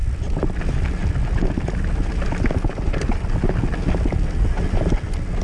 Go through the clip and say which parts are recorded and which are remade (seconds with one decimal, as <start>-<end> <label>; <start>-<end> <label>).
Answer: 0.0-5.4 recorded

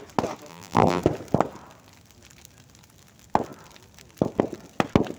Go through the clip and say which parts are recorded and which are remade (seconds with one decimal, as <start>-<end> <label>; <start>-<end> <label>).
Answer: 0.0-0.5 recorded; 0.5-1.0 remade; 1.0-5.2 recorded

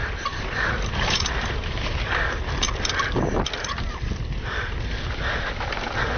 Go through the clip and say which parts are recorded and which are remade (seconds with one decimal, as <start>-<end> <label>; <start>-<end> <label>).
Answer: 0.0-2.4 remade; 2.4-6.2 recorded

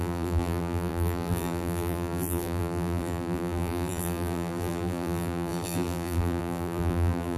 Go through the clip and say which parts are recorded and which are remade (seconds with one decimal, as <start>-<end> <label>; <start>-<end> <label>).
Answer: 0.0-7.4 remade

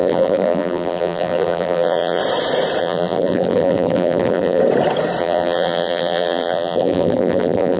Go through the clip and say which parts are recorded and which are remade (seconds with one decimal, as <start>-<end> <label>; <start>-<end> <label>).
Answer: 0.0-2.2 remade; 2.2-2.8 recorded; 2.8-4.6 remade; 4.6-5.2 recorded; 5.2-7.8 remade

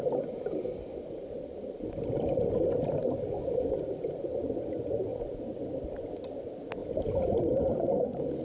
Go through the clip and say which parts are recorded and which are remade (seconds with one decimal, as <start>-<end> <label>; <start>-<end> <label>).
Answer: 0.0-0.9 remade; 0.9-3.4 recorded; 3.4-6.8 remade; 6.8-7.4 recorded; 7.4-8.4 remade

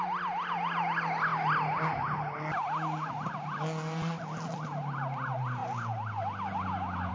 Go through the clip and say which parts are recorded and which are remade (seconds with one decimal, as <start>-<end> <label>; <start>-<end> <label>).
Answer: 0.0-7.1 recorded

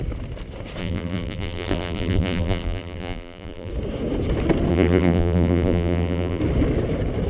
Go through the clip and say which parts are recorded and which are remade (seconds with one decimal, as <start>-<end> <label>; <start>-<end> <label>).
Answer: 0.0-0.8 recorded; 0.8-3.7 remade; 3.7-4.7 recorded; 4.7-6.4 remade; 6.4-7.3 recorded